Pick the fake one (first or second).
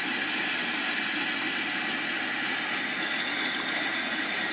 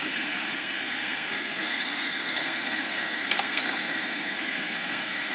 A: second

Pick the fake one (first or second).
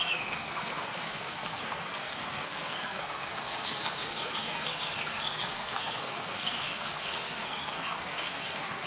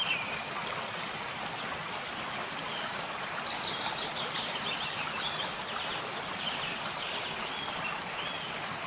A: first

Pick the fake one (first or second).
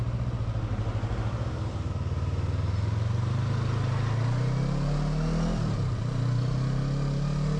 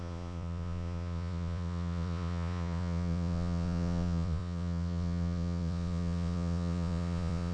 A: second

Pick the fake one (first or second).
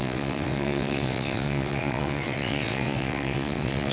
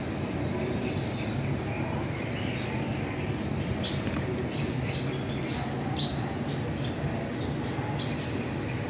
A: first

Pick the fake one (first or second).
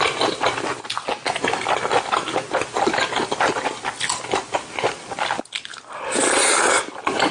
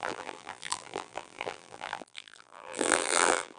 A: second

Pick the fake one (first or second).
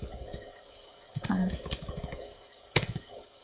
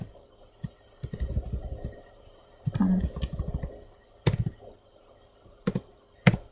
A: first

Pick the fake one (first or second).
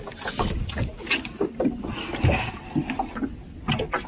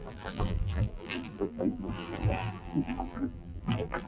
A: second